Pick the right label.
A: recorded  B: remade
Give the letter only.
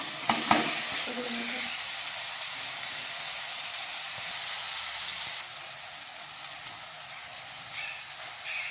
A